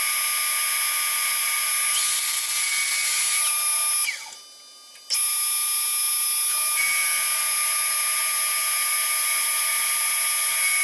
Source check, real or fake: real